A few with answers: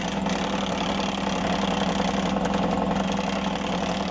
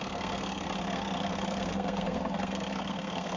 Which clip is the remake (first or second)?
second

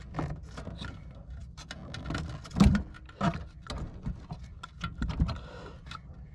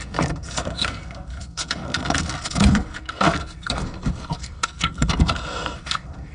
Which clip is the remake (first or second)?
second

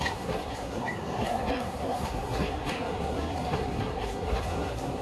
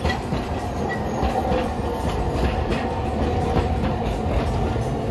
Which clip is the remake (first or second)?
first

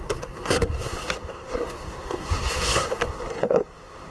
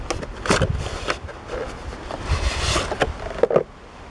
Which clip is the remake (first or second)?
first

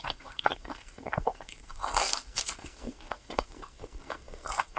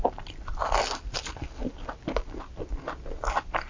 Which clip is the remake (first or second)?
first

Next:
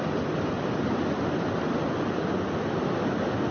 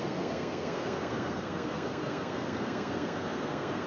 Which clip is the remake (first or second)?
second